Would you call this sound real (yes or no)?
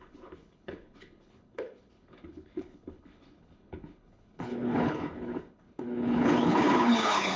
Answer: no